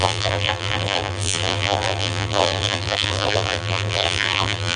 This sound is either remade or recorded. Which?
remade